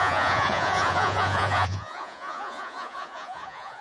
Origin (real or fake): fake